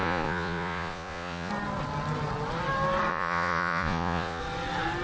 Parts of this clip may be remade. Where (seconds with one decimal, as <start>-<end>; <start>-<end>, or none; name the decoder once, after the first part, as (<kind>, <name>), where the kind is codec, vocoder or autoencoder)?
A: 0.0-1.5 (vocoder, Vocos); 3.1-4.4